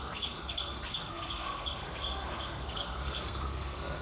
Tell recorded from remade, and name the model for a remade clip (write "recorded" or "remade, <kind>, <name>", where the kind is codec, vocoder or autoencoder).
remade, codec, SNAC